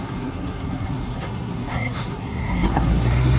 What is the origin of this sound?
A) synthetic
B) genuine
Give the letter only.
A